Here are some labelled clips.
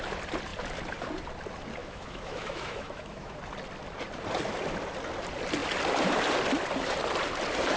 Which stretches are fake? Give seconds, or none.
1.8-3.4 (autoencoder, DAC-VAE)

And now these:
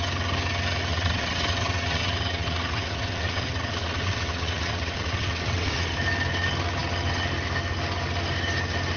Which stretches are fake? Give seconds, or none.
0.9-5.9 (vocoder, WaveNeXt)